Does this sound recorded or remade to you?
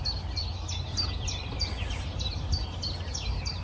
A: recorded